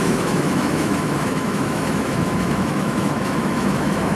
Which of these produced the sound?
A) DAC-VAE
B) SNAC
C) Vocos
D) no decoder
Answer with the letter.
A